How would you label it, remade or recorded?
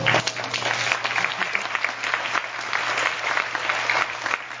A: recorded